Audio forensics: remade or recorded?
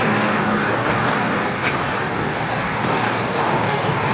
remade